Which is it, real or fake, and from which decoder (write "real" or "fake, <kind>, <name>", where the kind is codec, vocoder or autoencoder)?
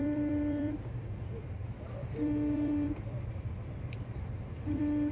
fake, vocoder, BigVGAN v2